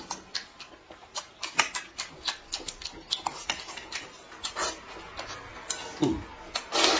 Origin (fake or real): real